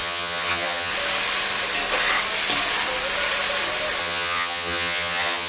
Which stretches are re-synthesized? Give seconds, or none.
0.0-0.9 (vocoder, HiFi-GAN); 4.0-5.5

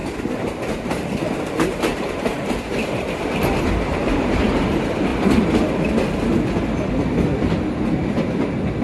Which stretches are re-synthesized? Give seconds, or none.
0.7-5.1 (vocoder, BigVGAN v2); 8.1-8.8

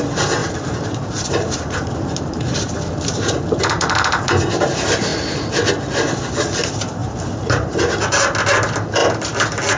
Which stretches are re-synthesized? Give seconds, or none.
0.4-4.4 (vocoder, BigVGAN v2); 7.0-8.0

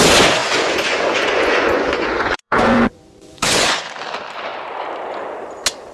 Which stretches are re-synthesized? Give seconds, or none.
0.4-3.9 (vocoder, Vocos)

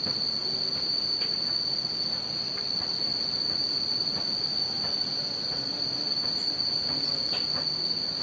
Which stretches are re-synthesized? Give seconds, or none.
0.4-1.5 (vocoder, BigVGAN v2); 3.1-7.1

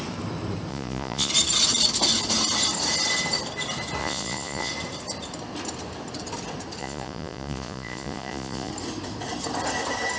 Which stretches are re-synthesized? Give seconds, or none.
0.7-1.3 (vocoder, Vocos); 4.0-4.7; 6.8-8.7